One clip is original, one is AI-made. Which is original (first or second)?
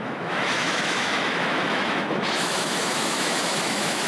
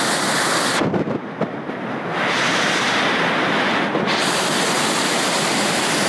second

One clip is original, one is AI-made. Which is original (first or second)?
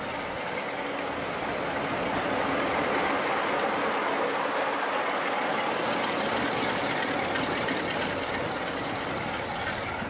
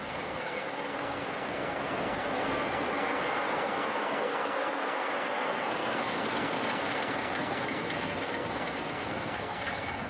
first